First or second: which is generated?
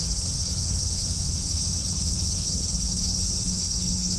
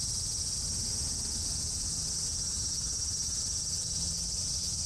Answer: first